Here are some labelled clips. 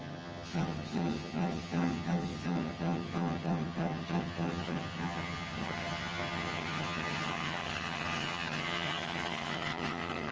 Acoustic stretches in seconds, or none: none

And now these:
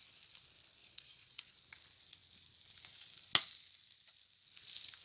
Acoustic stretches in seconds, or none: 0.0-0.8; 1.5-5.0

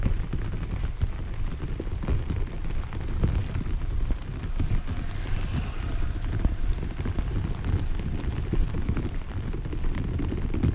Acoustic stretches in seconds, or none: 0.0-10.7